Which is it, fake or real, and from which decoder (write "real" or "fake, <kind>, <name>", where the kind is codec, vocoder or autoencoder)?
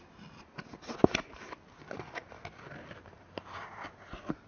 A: real